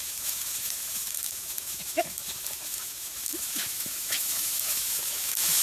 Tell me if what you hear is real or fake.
fake